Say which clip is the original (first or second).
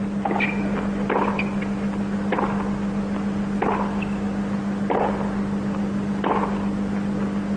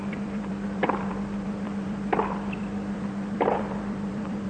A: first